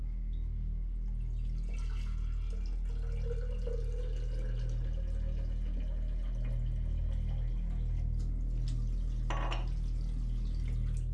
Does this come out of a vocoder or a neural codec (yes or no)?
no